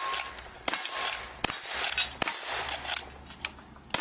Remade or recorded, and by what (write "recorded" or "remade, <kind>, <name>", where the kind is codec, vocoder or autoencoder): recorded